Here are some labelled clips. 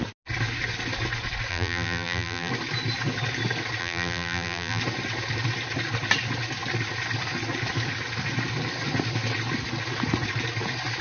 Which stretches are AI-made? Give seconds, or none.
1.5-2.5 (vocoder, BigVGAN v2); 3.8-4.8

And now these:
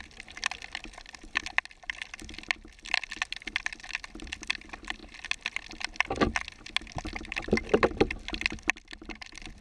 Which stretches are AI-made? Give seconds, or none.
none

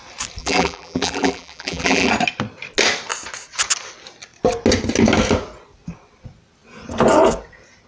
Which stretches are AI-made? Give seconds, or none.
0.4-2.1 (vocoder, BigVGAN v2)

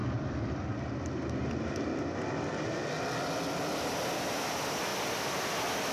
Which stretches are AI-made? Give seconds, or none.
0.0-1.4 (vocoder, BigVGAN v2); 4.9-5.5

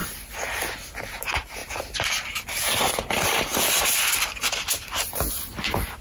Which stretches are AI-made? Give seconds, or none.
1.6-5.1 (vocoder, BigVGAN v2)

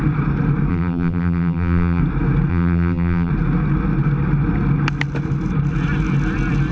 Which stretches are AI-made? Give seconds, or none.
0.7-2.0 (vocoder, BigVGAN v2); 2.5-3.3